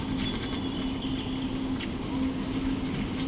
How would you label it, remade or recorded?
recorded